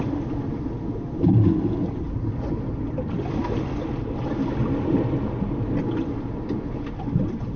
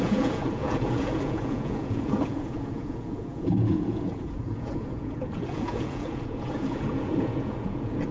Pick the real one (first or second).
first